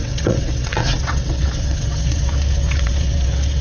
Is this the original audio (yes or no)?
no